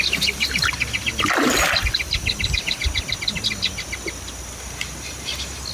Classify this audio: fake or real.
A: real